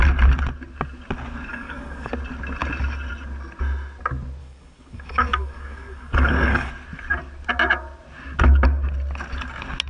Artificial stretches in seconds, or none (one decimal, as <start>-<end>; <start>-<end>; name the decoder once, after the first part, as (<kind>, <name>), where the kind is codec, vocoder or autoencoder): 1.5-2.1 (codec, DAC); 4.4-6.7